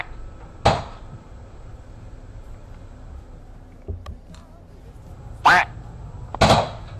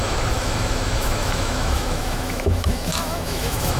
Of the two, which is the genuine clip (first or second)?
first